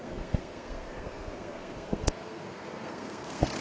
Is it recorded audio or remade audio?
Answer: remade